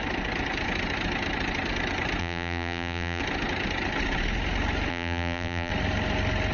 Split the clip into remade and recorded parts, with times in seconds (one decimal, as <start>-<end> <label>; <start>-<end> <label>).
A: 0.0-2.2 recorded; 2.2-3.2 remade; 3.2-4.9 recorded; 4.9-5.7 remade; 5.7-6.5 recorded